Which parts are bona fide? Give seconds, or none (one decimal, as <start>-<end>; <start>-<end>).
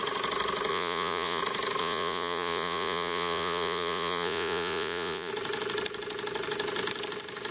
0.0-0.7; 1.4-1.8; 5.3-7.5